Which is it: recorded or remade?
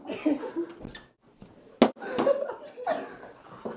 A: recorded